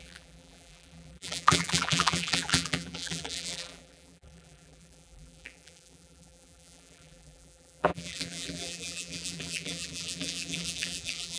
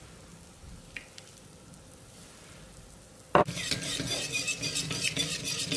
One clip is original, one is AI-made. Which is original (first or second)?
second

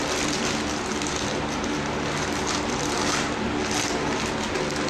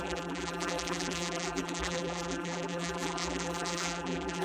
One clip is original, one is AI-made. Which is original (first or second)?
first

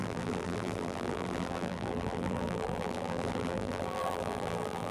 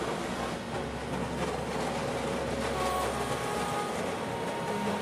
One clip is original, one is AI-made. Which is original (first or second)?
second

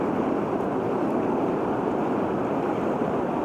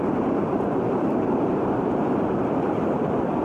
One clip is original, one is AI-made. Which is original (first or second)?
first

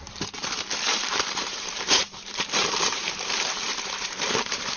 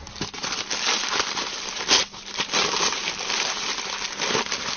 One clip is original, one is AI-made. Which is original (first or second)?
second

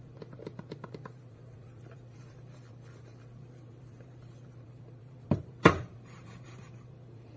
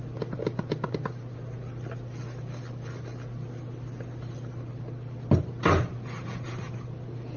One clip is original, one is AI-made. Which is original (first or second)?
second